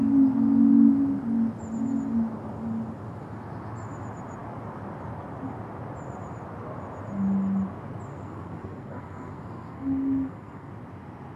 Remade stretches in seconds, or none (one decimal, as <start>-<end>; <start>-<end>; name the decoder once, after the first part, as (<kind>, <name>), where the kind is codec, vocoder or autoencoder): 8.1-10.7 (codec, SNAC)